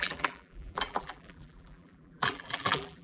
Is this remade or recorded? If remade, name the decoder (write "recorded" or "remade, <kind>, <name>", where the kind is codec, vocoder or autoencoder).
remade, vocoder, BigVGAN v2